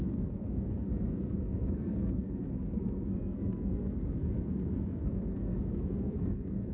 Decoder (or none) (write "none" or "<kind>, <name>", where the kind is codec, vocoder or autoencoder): codec, SNAC